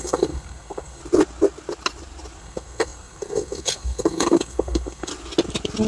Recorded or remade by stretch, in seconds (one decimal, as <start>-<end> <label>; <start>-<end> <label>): 0.0-1.0 remade; 1.0-2.4 recorded; 2.4-5.1 remade; 5.1-5.9 recorded